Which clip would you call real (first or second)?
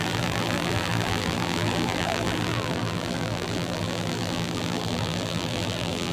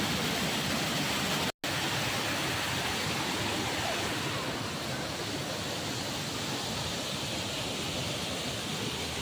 second